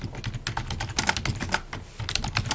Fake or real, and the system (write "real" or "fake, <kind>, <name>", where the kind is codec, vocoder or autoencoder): real